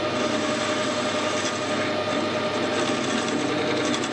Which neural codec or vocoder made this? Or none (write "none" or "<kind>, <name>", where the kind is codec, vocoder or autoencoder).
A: none